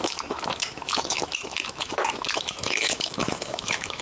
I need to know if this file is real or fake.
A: fake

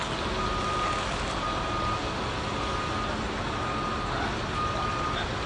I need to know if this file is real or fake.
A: real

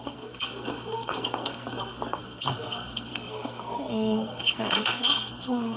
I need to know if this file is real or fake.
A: fake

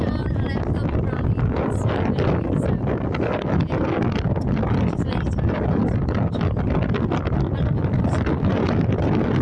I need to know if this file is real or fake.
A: real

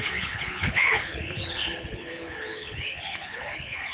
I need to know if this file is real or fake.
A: fake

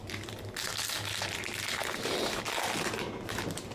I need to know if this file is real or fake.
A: real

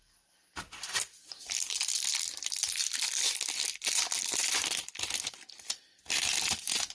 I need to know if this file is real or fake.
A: real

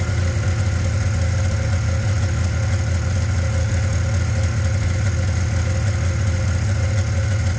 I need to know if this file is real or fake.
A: real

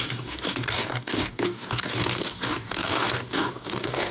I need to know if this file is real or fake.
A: fake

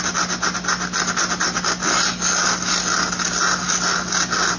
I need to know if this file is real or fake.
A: real